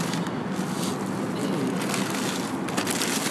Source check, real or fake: real